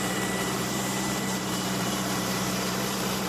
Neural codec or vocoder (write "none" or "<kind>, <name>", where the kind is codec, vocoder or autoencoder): vocoder, BigVGAN v2